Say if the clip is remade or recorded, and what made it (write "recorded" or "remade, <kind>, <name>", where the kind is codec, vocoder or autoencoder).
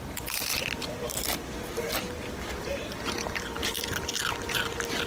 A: remade, vocoder, BigVGAN v2